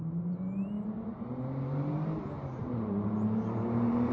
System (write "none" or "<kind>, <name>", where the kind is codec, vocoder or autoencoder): vocoder, BigVGAN v2